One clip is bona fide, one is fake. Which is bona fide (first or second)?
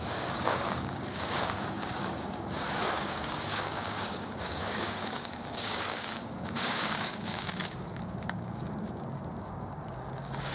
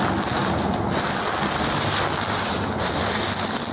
second